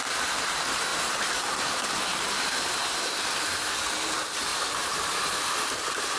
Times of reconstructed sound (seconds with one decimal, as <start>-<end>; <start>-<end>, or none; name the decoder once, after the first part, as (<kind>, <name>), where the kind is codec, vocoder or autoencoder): 0.9-2.5 (vocoder, BigVGAN v2); 4.5-5.1